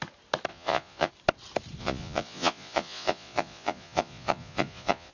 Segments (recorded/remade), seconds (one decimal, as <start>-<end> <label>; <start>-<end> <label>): 0.0-0.5 recorded; 0.5-1.1 remade; 1.1-1.8 recorded; 1.8-5.1 remade